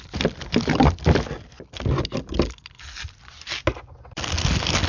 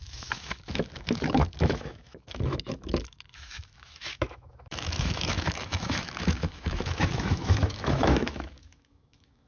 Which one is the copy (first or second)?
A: second